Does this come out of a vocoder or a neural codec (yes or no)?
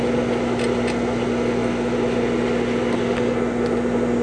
no